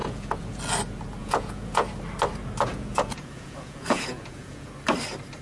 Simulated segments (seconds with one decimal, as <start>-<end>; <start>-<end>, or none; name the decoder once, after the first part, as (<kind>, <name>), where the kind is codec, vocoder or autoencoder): 0.0-0.6 (vocoder, Vocos); 1.2-1.9; 2.7-4.7